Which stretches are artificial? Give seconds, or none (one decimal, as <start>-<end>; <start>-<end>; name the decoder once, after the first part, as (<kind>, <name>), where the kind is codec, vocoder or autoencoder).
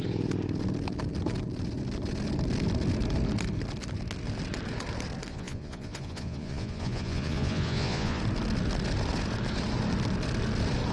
5.3-8.2 (vocoder, Vocos)